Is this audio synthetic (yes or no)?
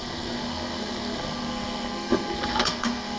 yes